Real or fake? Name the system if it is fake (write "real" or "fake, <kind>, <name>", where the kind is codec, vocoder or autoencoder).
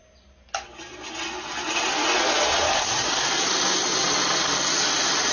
real